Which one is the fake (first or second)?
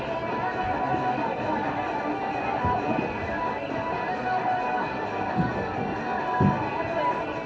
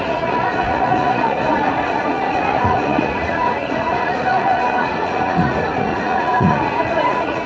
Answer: second